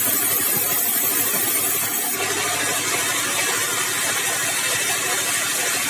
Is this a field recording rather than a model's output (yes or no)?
yes